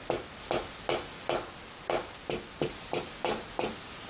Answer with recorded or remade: recorded